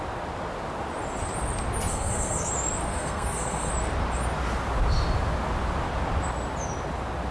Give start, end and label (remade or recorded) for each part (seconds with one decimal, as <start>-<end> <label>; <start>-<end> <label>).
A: 0.0-1.9 recorded; 1.9-2.5 remade; 2.5-2.9 recorded; 2.9-3.7 remade; 3.7-7.3 recorded